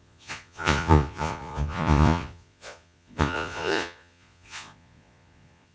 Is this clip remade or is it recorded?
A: remade